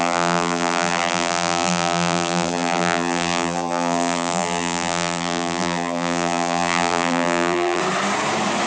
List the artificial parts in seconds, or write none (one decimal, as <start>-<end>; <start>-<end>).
0.0-7.8